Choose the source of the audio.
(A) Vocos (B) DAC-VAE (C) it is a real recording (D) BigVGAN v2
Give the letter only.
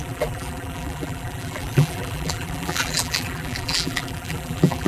D